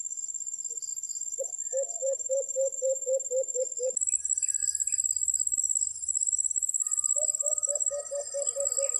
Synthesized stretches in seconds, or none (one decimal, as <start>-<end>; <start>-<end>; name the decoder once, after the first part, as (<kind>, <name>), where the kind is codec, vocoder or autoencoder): 2.0-3.6 (vocoder, BigVGAN v2)